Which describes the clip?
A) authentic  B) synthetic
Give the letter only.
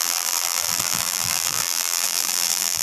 B